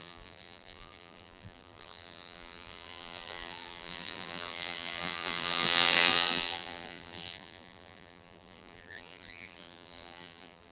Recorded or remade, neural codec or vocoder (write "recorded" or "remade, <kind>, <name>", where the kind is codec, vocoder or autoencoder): remade, vocoder, BigVGAN v2